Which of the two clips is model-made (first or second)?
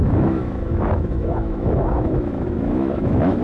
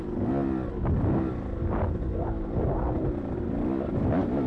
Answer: first